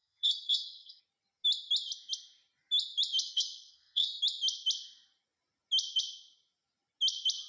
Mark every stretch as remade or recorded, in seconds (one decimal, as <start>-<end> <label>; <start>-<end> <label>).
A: 0.0-1.0 remade; 1.0-3.2 recorded; 3.2-4.2 remade; 4.2-7.5 recorded